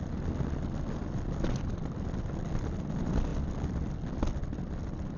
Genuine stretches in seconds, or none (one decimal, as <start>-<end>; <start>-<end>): 0.0-5.2